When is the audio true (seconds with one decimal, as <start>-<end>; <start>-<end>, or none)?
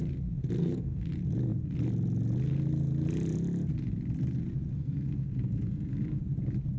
0.0-0.6; 1.1-4.7; 6.2-6.8